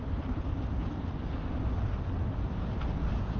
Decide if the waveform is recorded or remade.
recorded